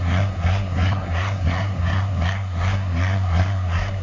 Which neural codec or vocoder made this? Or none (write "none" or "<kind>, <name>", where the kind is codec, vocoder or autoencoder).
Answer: codec, SNAC